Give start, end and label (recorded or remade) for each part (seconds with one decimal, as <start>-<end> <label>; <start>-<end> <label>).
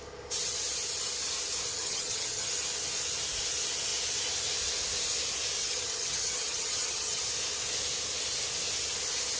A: 0.0-1.7 recorded; 1.7-2.5 remade; 2.5-5.6 recorded; 5.6-7.2 remade; 7.2-9.4 recorded